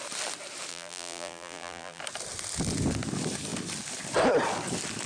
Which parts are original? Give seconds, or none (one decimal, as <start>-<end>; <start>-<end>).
0.0-0.7; 2.0-5.1